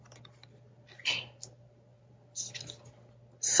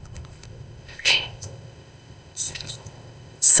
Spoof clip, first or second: second